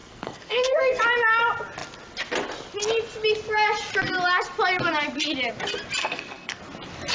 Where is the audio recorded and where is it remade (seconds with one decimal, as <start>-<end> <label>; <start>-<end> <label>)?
0.0-1.0 remade; 1.0-6.0 recorded; 6.0-6.6 remade; 6.6-7.1 recorded